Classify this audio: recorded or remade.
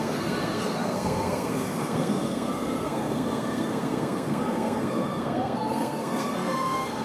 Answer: remade